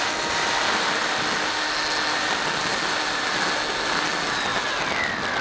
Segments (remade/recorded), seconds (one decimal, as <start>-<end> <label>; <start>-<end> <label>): 0.0-4.5 recorded; 4.5-5.4 remade